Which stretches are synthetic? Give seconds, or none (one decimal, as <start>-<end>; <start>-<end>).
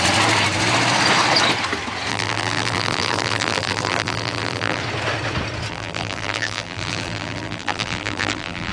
2.1-4.8; 5.7-8.7